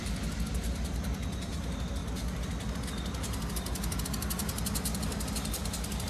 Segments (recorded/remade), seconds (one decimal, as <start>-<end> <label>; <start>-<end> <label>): 0.0-6.1 recorded